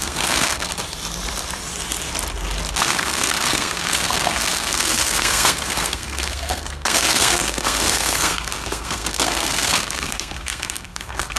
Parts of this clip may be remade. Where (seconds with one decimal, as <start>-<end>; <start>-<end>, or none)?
0.0-0.7; 2.7-11.4